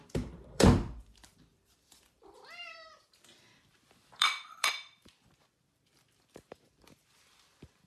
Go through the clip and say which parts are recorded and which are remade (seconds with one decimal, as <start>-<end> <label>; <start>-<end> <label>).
0.0-7.9 remade